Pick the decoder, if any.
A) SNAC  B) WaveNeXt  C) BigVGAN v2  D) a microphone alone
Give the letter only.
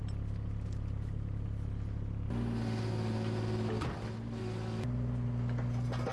D